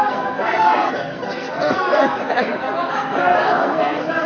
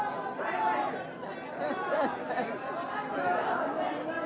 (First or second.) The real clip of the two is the second